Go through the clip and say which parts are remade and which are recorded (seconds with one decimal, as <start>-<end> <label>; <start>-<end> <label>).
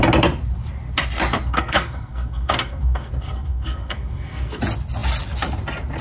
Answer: 0.0-1.5 recorded; 1.5-4.6 remade; 4.6-6.0 recorded